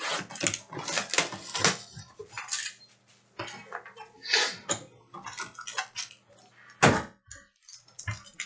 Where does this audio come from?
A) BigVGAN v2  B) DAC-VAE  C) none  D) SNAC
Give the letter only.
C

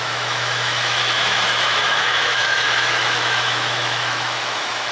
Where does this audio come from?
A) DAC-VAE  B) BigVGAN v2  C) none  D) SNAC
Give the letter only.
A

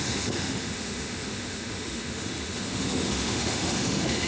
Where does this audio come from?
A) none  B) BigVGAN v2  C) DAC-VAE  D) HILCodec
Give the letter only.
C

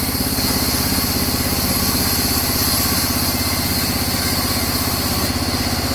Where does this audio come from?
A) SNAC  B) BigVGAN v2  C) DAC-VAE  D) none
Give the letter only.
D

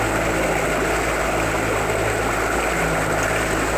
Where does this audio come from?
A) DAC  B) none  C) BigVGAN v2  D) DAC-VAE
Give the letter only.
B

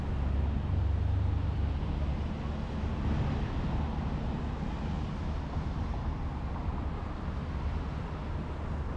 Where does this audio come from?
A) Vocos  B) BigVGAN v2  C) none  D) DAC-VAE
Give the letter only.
C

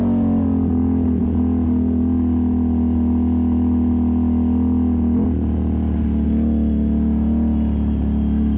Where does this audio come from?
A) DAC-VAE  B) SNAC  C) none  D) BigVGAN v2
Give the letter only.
C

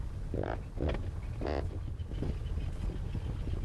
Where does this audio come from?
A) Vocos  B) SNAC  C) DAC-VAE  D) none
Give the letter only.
D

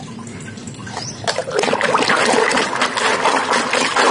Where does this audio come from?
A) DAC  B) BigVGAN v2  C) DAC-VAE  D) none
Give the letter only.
D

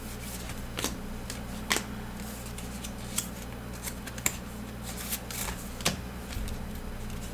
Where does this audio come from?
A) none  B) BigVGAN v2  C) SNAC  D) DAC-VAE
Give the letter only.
A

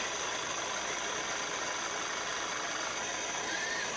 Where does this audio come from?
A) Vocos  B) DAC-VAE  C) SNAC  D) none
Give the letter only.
D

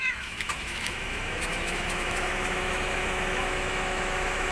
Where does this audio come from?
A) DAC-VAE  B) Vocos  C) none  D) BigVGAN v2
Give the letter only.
A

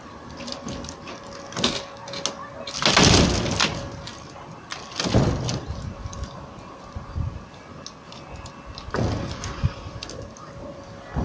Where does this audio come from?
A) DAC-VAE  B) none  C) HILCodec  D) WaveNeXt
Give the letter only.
B